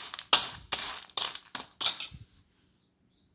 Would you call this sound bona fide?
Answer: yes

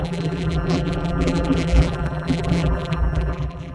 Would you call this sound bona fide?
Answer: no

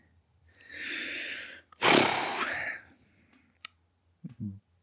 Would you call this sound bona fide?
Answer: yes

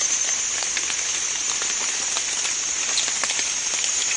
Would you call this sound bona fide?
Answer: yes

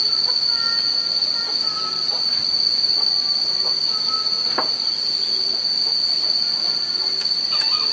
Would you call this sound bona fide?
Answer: yes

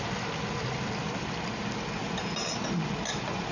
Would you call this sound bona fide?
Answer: yes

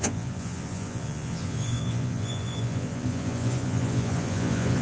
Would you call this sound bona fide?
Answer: no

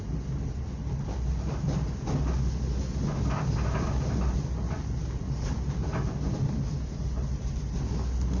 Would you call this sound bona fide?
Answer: yes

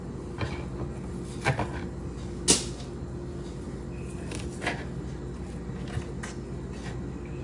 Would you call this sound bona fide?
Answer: yes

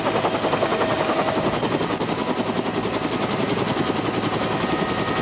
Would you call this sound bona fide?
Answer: yes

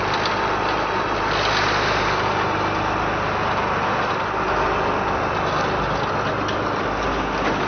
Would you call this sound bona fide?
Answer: yes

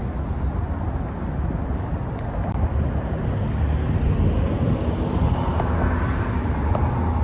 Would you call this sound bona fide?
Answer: yes